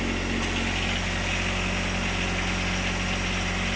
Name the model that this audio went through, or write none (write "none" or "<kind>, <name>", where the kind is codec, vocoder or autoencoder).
none